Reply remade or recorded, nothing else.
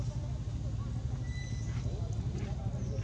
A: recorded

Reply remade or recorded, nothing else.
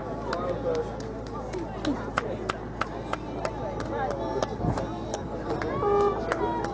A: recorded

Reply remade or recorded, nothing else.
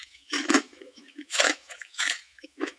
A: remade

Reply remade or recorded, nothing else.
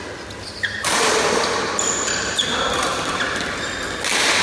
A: recorded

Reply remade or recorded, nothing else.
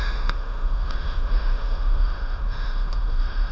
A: remade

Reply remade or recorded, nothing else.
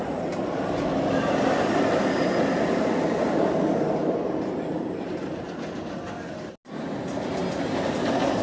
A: recorded